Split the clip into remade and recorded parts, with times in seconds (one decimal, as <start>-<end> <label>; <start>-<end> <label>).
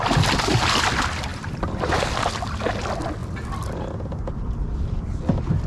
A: 0.0-1.3 recorded; 1.3-1.9 remade; 1.9-5.7 recorded